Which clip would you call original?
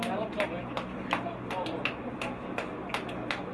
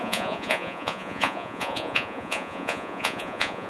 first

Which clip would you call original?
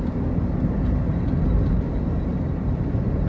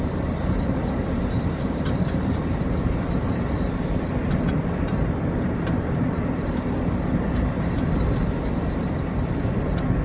first